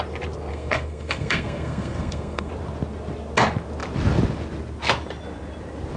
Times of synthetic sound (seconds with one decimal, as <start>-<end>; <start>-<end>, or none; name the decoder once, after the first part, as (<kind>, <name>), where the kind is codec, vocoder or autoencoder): 0.5-2.5 (codec, SNAC)